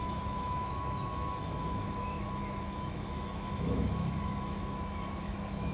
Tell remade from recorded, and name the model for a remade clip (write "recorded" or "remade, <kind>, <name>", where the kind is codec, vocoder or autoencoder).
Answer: remade, autoencoder, DAC-VAE